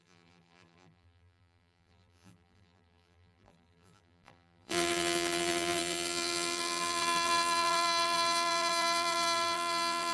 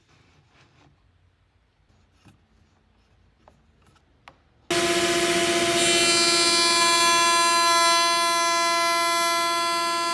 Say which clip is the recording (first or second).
second